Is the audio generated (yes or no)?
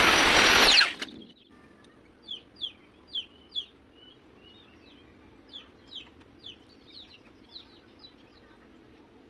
no